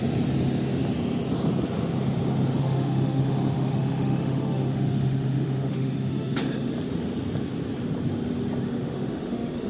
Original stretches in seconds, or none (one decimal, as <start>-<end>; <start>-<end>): 0.0-2.6; 6.7-8.7